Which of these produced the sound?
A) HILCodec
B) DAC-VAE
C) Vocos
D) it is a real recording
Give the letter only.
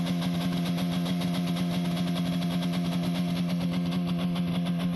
D